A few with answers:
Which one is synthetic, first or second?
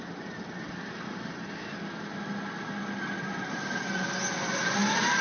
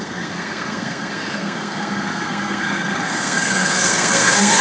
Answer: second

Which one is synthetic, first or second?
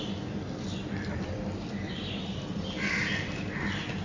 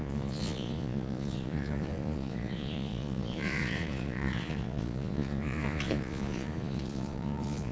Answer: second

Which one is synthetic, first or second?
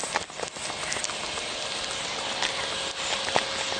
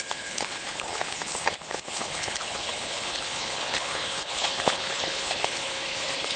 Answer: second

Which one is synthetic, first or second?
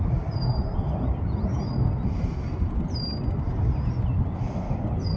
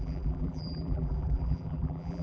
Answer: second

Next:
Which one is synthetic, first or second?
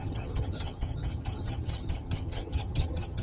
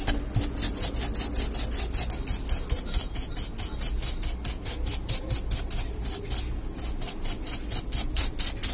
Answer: first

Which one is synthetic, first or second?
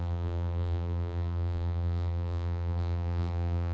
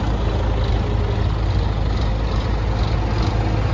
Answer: first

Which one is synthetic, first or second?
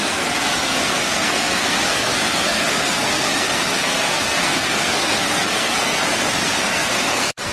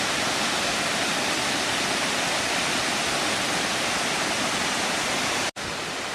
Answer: first